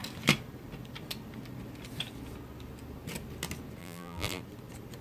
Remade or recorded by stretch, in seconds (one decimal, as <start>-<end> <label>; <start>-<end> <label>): 0.0-3.8 recorded; 3.8-4.4 remade; 4.4-5.0 recorded